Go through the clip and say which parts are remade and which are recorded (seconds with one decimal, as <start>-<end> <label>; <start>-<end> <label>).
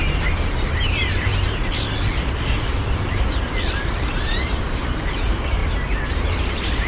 0.0-1.3 remade; 1.3-3.8 recorded; 3.8-5.6 remade; 5.6-6.1 recorded; 6.1-6.9 remade